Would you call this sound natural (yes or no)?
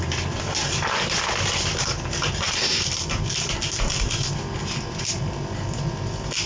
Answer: yes